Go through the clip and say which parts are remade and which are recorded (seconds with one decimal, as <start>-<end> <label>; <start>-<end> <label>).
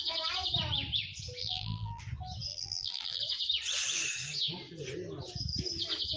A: 0.0-1.4 recorded; 1.4-2.0 remade; 2.0-2.5 recorded; 2.5-3.2 remade; 3.2-6.2 recorded